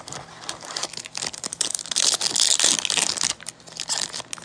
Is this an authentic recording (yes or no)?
yes